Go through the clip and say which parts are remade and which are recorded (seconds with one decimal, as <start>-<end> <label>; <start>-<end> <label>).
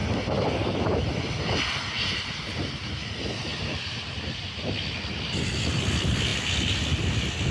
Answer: 0.0-7.5 recorded